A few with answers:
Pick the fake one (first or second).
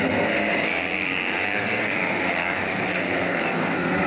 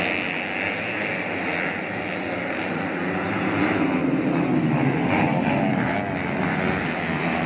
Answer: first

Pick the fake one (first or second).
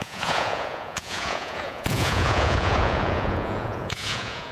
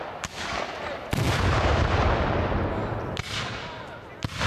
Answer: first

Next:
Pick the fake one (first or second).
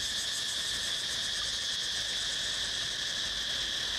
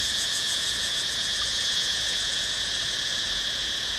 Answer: second